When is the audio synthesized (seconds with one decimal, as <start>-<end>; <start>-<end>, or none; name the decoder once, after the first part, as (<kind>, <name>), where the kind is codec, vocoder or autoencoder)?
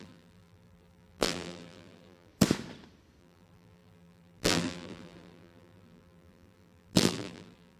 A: 0.0-2.3 (vocoder, BigVGAN v2); 3.2-7.8